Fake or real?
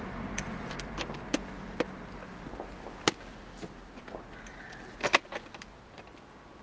real